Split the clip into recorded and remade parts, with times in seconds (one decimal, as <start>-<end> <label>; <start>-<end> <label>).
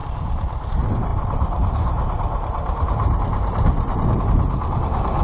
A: 0.0-0.7 remade; 0.7-1.1 recorded; 1.1-4.2 remade; 4.2-5.2 recorded